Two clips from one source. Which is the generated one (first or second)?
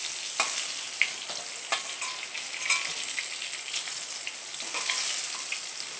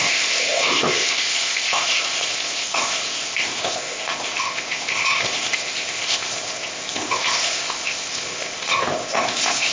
second